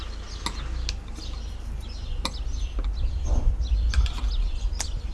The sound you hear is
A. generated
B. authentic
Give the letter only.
B